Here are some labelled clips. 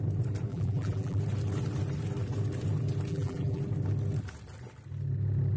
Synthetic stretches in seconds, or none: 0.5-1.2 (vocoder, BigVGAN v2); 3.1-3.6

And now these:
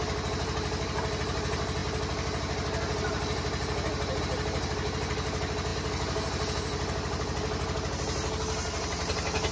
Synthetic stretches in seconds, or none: none

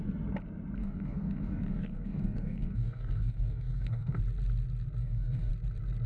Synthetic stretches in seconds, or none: 0.8-4.2 (codec, DAC); 5.0-5.5

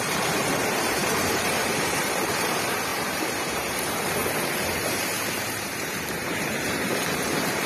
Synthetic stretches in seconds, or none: 0.0-7.7 (vocoder, BigVGAN v2)

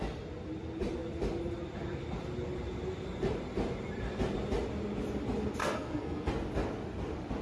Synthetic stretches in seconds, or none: 5.6-6.3 (codec, SNAC)